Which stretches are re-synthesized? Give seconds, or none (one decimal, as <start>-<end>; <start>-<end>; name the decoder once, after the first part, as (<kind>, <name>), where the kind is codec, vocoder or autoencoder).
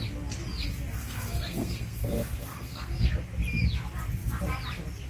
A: 1.0-3.1 (codec, SNAC)